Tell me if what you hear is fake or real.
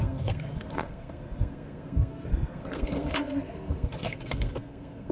fake